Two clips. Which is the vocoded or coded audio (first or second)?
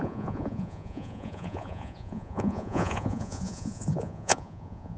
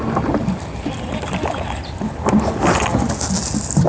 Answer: first